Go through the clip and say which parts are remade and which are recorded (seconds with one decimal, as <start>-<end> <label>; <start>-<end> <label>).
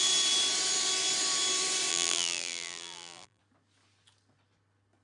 0.0-1.9 recorded; 1.9-3.4 remade; 3.4-5.0 recorded